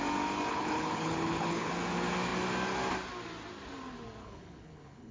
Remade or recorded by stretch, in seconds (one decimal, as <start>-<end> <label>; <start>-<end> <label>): 0.0-0.5 recorded; 0.5-1.7 remade; 1.7-4.2 recorded; 4.2-5.1 remade